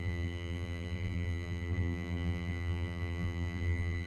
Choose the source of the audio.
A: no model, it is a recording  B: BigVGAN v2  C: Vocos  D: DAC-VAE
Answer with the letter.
B